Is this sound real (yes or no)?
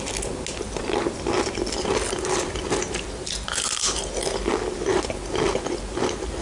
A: yes